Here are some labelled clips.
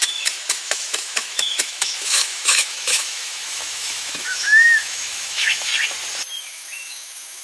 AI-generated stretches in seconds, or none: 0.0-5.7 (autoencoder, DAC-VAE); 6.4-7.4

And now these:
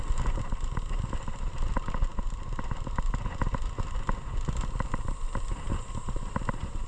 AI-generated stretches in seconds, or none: none